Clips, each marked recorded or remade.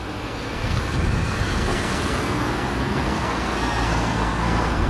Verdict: remade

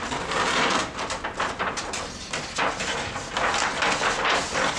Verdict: recorded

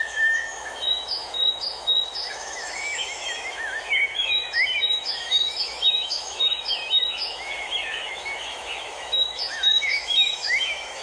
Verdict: remade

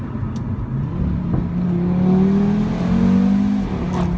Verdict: recorded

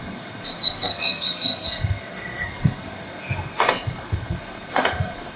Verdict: remade